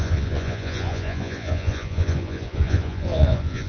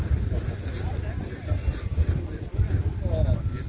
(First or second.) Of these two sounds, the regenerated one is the first